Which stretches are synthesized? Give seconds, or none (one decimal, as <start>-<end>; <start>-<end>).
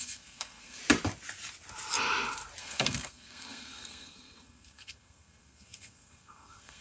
0.0-0.8; 2.6-6.8